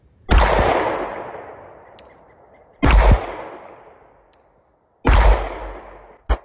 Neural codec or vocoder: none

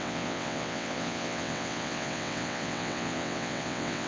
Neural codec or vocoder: vocoder, WaveNeXt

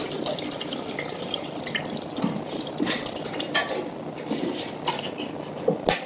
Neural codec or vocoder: none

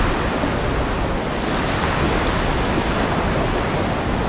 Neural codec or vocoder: none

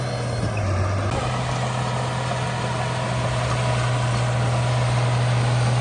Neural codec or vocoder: none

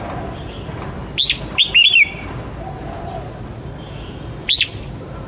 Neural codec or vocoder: none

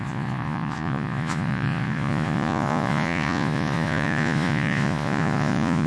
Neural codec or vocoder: vocoder, Vocos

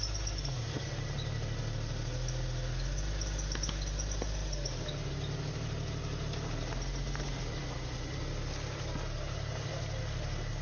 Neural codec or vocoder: none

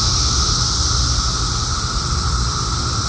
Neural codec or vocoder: none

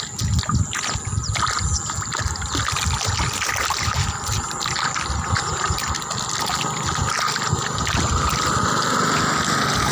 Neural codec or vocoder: none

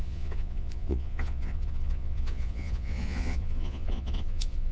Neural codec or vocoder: vocoder, Vocos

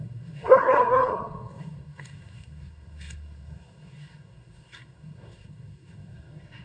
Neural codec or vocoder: codec, SNAC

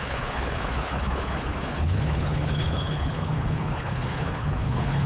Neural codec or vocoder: codec, HILCodec